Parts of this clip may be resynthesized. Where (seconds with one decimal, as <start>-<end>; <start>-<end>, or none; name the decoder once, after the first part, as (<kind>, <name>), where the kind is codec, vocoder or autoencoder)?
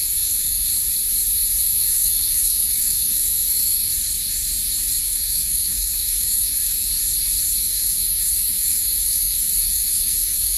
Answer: 0.0-0.7 (codec, SNAC); 1.6-3.9; 5.0-6.9; 7.6-10.6